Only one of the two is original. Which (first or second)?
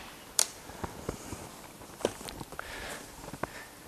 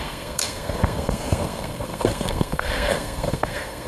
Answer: first